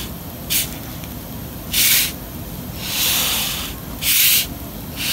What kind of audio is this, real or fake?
real